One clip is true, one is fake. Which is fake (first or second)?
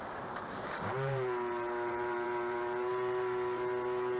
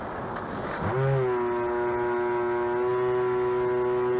first